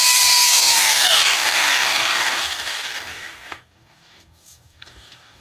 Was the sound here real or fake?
fake